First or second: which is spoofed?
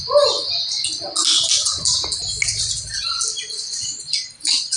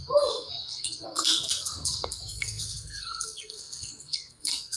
second